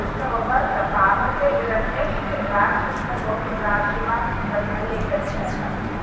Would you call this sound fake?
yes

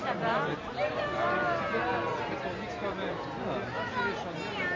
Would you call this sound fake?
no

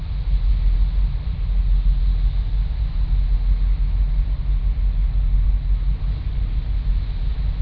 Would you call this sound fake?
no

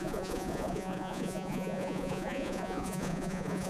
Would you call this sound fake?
yes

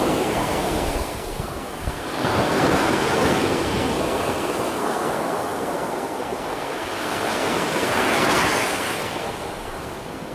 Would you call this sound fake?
yes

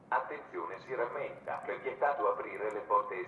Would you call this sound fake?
yes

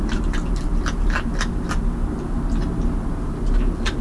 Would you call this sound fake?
no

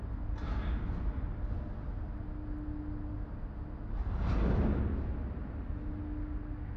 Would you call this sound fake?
no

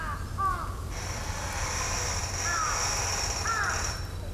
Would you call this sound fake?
no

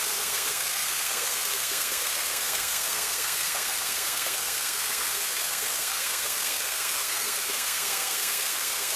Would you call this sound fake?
yes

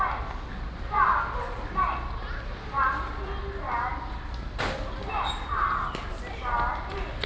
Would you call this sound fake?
no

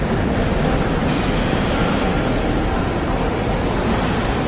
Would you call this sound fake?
no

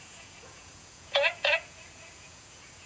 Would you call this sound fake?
yes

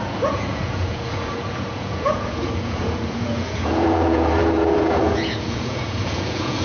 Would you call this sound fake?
yes